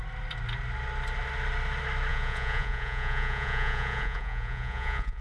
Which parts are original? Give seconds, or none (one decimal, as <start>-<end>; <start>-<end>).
0.0-2.1